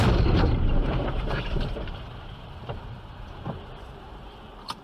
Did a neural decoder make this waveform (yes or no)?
yes